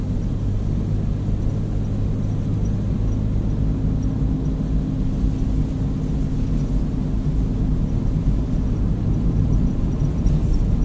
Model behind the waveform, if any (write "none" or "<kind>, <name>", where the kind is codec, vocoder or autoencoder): none